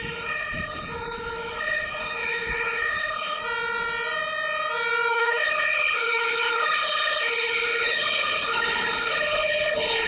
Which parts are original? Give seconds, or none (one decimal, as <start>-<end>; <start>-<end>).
3.4-5.1